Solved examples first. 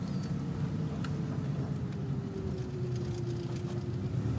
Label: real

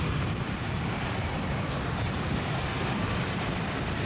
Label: fake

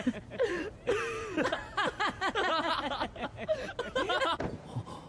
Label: fake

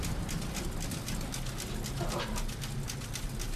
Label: real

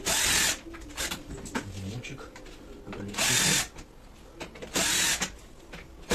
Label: real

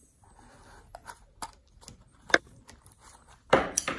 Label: real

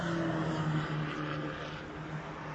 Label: real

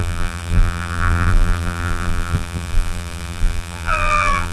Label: fake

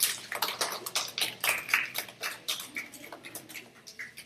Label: real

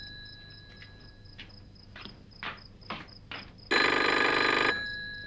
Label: real